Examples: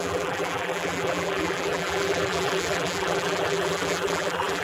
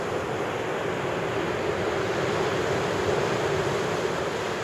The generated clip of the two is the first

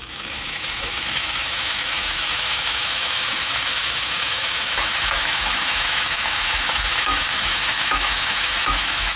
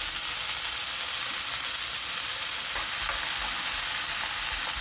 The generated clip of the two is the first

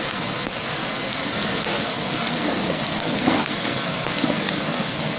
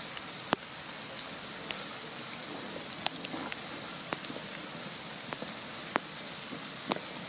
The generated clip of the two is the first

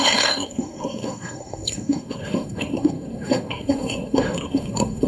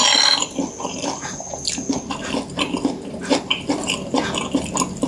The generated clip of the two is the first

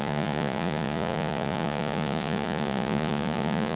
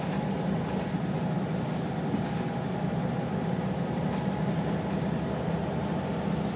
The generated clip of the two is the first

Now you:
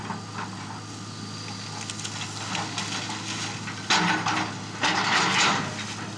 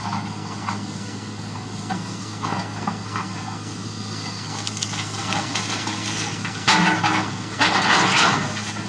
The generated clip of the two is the second